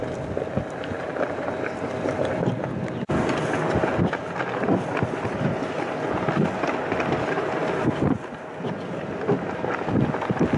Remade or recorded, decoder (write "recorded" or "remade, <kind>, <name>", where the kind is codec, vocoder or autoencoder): recorded